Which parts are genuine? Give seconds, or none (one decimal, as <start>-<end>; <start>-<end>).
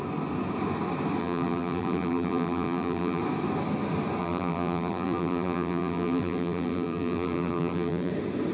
0.0-1.2; 3.2-4.2; 8.1-8.5